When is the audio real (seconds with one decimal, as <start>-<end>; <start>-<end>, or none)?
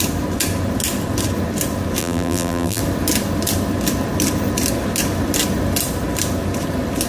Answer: 0.0-2.0; 2.8-7.1